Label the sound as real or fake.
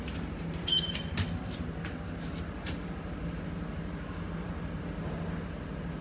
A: real